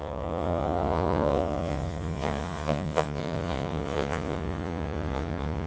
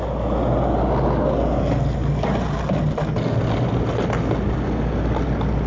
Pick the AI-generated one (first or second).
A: first